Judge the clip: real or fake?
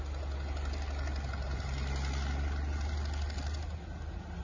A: real